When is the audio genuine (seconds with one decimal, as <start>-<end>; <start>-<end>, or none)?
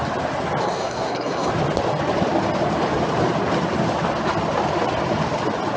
0.0-0.6; 1.5-5.8